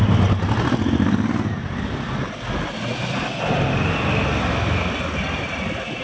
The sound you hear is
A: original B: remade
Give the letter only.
A